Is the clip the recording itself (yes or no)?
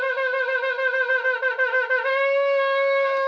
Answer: yes